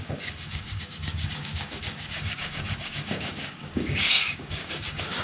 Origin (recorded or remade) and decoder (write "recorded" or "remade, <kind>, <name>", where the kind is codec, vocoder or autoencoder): remade, codec, DAC